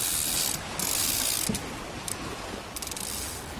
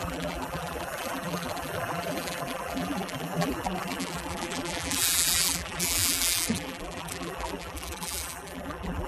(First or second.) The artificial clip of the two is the second